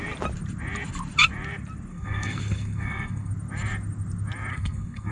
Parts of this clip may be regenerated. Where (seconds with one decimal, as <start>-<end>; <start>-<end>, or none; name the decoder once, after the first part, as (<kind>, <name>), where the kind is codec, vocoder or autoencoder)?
1.9-3.3 (codec, SNAC); 4.5-5.1